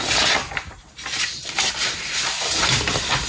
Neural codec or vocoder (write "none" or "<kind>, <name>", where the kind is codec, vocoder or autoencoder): none